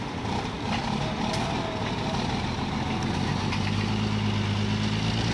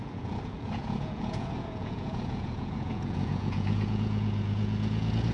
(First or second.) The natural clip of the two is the first